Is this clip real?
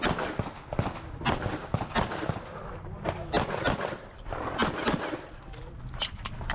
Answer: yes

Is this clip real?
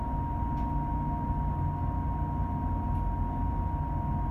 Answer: yes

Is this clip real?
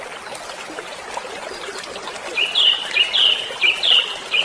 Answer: yes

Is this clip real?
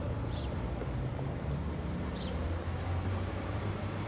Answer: no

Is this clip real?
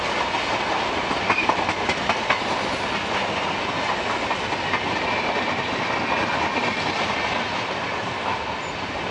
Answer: yes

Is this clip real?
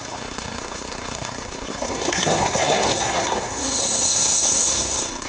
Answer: no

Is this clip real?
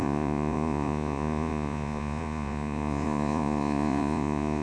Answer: no